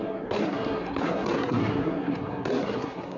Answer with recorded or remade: remade